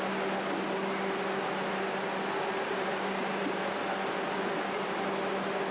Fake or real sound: real